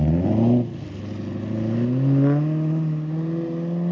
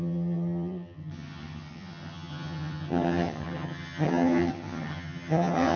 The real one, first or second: first